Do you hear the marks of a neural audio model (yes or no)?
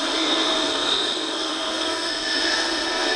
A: yes